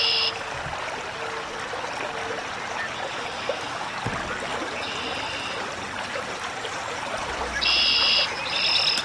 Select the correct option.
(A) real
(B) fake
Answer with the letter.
A